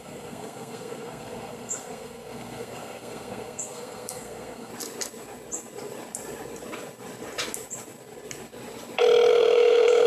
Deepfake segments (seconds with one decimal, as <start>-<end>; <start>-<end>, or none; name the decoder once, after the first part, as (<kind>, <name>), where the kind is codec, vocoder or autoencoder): 0.0-4.7 (codec, SNAC); 9.3-10.1